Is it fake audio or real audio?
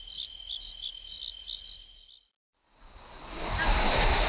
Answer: real